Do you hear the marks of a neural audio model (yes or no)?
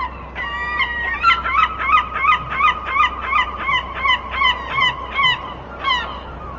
no